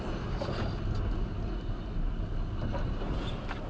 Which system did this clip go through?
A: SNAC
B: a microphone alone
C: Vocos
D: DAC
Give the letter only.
B